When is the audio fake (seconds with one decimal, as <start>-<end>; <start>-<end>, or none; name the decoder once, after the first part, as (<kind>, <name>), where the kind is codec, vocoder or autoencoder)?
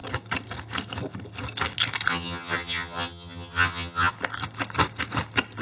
2.1-4.1 (vocoder, HiFi-GAN)